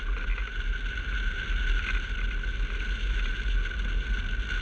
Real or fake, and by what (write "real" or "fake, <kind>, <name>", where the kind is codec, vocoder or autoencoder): real